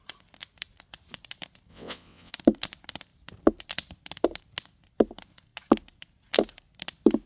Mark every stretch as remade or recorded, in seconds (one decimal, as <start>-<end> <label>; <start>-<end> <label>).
0.0-1.7 recorded; 1.7-2.3 remade; 2.3-7.3 recorded